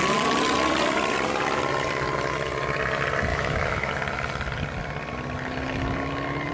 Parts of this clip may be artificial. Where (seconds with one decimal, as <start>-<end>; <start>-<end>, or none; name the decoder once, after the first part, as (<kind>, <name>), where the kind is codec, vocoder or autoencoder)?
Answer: 3.3-3.9 (autoencoder, DAC-VAE)